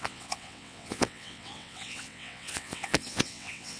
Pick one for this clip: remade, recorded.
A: remade